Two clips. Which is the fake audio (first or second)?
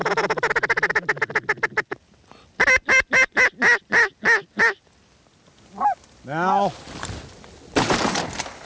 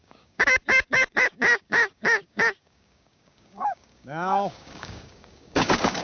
second